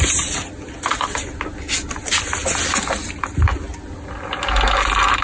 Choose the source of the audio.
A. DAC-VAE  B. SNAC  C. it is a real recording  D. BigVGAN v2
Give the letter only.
C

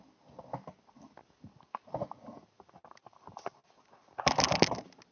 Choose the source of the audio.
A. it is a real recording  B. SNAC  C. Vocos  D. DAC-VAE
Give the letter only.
A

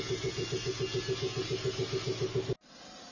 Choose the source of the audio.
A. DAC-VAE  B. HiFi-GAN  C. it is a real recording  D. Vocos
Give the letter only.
C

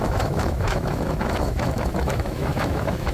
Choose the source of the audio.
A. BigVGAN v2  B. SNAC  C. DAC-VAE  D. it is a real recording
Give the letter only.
C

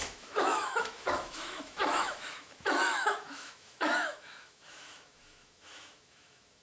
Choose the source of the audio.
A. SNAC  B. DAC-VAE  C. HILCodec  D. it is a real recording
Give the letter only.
B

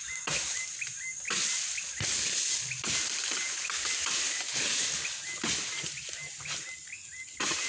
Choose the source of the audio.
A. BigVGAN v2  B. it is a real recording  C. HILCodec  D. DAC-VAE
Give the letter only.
B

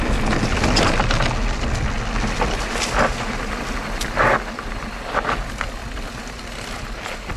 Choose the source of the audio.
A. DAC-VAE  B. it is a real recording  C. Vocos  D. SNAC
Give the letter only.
B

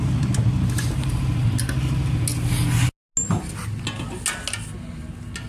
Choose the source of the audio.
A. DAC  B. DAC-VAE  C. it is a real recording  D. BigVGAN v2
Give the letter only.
C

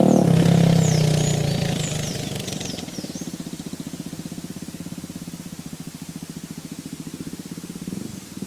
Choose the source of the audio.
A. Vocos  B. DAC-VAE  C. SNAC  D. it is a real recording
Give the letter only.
D